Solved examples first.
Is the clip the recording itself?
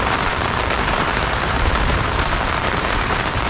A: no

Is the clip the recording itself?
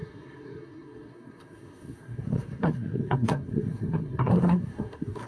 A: no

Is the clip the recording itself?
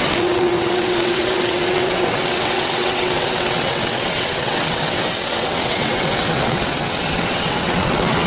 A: no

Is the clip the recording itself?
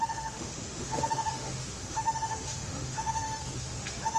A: no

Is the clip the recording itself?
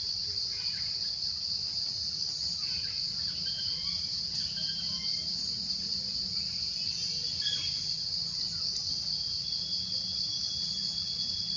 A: yes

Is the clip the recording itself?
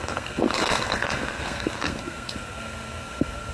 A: no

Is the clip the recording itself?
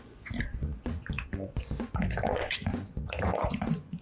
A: no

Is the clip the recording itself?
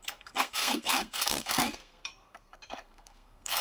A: no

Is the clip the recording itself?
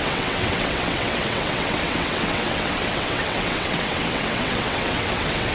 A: no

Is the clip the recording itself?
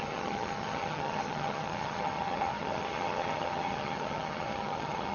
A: no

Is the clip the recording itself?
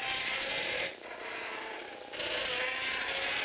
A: yes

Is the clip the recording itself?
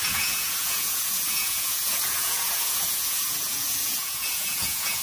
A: no